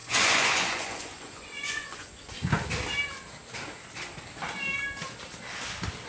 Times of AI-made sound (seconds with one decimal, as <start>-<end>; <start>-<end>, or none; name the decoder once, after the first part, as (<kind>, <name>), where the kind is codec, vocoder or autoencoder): 0.0-2.3 (vocoder, Vocos)